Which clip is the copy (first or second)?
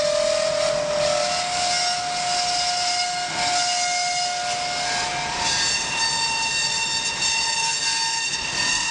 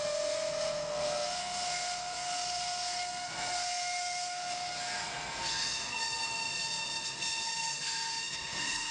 second